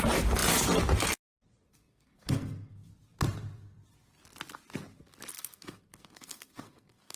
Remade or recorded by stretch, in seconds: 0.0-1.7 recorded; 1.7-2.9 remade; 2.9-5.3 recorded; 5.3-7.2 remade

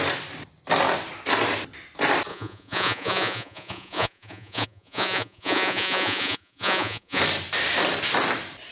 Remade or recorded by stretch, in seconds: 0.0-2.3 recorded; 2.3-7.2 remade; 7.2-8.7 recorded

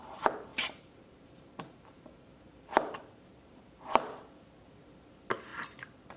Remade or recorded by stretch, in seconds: 0.0-0.5 recorded; 0.5-4.2 remade; 4.2-6.2 recorded

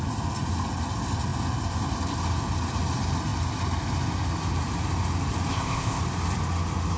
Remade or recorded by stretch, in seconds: 0.0-5.5 recorded; 5.5-6.0 remade; 6.0-7.0 recorded